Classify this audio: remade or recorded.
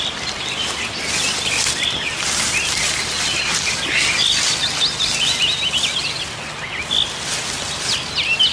recorded